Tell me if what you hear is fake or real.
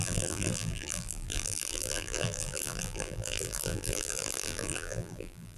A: fake